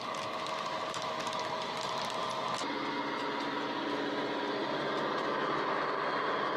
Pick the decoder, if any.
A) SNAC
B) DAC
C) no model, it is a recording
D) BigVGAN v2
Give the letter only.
C